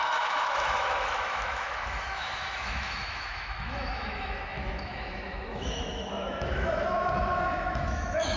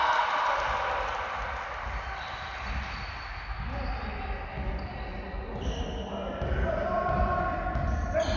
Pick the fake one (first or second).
first